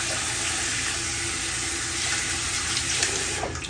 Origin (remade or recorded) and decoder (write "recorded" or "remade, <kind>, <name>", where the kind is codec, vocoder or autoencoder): recorded